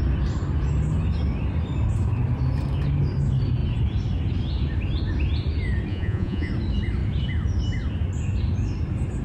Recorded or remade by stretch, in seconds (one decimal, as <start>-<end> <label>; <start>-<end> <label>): 0.0-5.9 recorded; 5.9-6.5 remade; 6.5-9.2 recorded